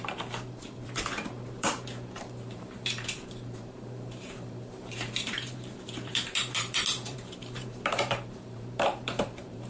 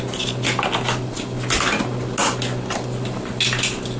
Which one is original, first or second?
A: second